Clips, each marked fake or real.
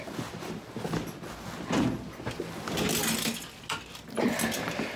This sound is real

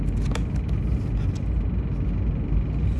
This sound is real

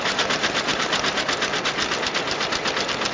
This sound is real